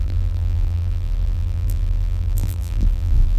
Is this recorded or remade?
remade